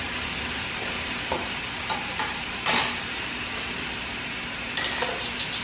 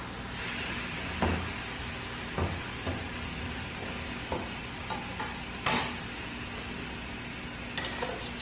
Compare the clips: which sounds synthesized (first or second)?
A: first